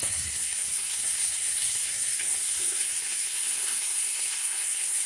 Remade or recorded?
remade